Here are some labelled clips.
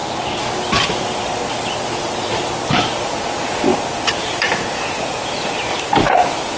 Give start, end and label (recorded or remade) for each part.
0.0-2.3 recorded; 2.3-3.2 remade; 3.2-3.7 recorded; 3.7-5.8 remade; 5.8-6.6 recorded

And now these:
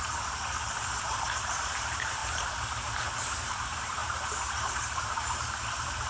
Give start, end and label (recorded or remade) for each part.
0.0-2.2 remade; 2.2-2.8 recorded; 2.8-6.1 remade

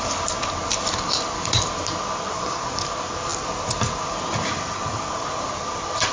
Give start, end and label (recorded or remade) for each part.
0.0-6.1 recorded

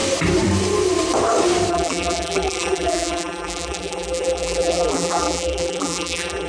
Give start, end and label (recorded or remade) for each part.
0.0-1.7 recorded; 1.7-6.5 remade